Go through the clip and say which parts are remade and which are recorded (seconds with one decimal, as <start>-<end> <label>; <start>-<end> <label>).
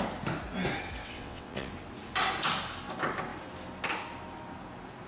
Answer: 0.0-1.0 recorded; 1.0-1.7 remade; 1.7-5.1 recorded